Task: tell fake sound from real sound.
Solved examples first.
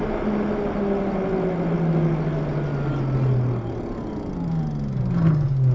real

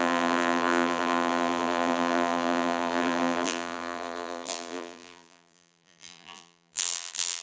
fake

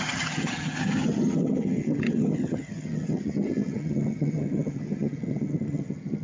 fake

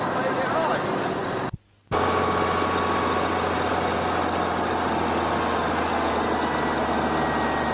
real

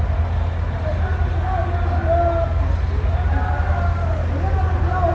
real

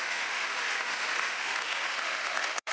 fake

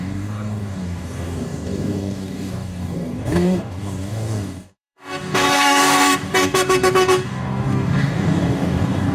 fake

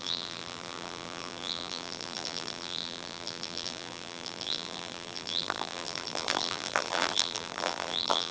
fake